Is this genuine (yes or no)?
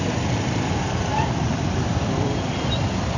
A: yes